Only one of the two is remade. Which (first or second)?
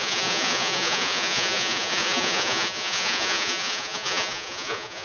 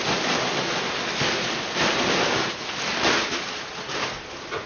first